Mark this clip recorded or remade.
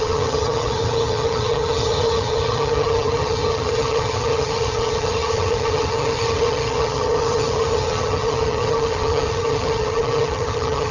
remade